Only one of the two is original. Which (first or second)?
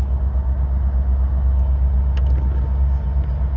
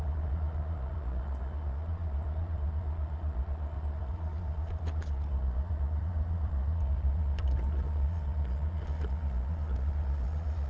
first